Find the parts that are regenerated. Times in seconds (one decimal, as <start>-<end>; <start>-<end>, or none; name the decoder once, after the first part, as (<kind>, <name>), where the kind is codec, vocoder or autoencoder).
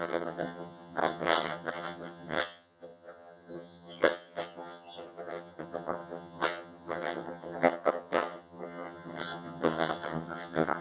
0.0-10.8 (vocoder, HiFi-GAN)